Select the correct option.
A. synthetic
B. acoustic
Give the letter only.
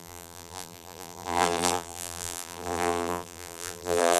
A